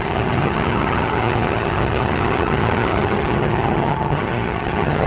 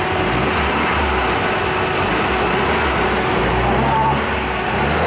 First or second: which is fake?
first